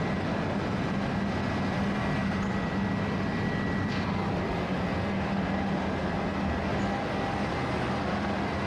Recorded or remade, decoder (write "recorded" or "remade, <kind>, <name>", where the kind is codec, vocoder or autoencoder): recorded